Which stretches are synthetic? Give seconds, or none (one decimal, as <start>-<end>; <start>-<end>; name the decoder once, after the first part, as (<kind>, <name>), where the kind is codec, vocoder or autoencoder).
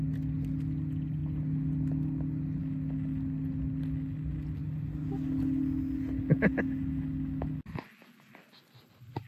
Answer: none